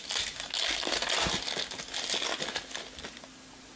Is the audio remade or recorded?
recorded